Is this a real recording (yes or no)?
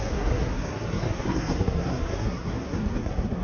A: no